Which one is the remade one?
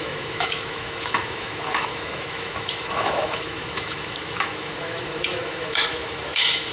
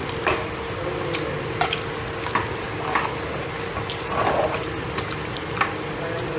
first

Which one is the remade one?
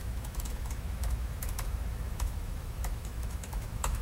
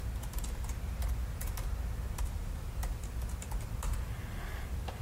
first